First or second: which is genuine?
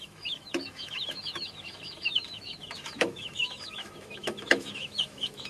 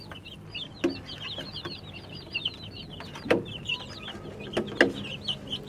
second